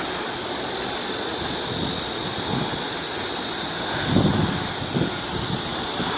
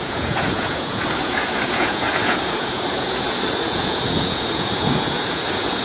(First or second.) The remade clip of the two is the second